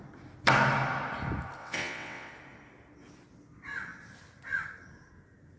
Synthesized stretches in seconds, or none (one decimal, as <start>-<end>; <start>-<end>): 1.6-2.3